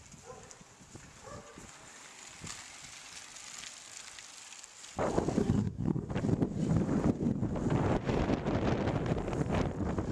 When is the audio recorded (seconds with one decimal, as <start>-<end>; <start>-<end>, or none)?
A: 0.0-5.4; 6.1-10.1